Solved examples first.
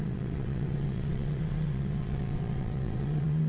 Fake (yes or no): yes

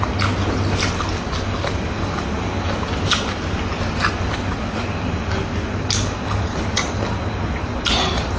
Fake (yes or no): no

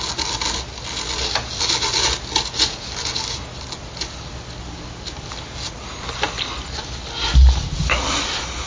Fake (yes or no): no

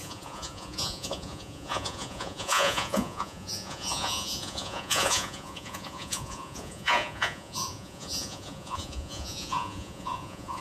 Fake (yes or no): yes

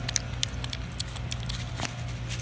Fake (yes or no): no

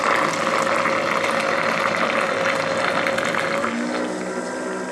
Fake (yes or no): no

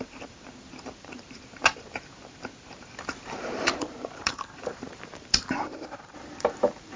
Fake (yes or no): yes